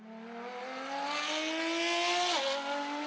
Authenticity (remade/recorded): recorded